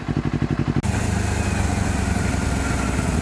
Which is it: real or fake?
real